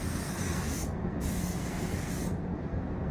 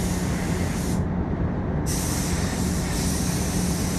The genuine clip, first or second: second